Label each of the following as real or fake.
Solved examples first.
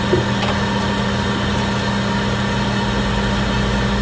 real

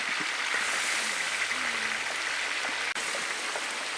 real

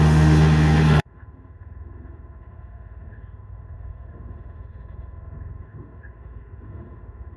fake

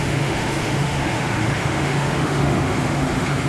fake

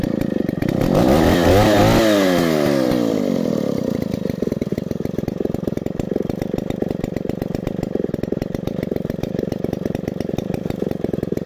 real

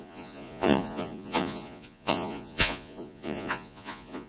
fake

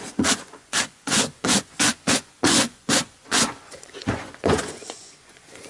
fake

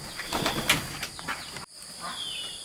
real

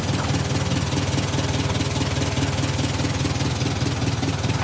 real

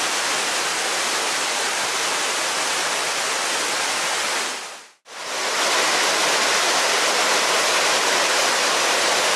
real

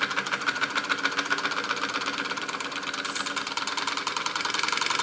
real